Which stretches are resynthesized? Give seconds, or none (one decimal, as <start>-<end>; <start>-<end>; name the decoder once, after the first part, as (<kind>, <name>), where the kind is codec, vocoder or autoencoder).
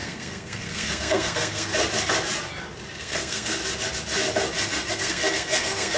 0.0-1.7 (codec, SNAC); 3.0-3.6; 4.9-6.0